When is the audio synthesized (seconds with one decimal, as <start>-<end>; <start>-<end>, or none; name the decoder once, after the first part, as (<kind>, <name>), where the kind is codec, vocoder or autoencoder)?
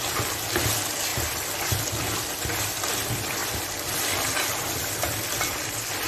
1.1-2.9 (vocoder, BigVGAN v2); 3.4-4.6